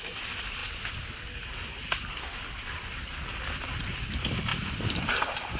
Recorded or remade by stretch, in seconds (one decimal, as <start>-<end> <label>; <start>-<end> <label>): 0.0-4.5 recorded; 4.5-5.1 remade; 5.1-5.6 recorded